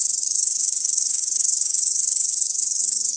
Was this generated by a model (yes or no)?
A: yes